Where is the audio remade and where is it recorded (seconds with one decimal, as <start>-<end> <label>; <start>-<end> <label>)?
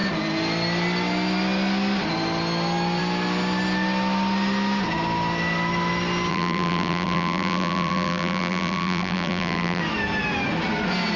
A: 0.0-6.3 recorded; 6.3-9.8 remade; 9.8-11.2 recorded